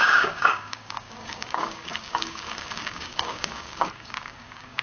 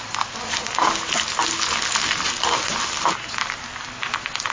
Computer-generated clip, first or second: first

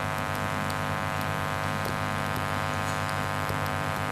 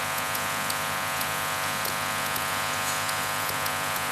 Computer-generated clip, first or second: second